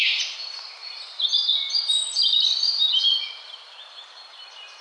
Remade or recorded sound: recorded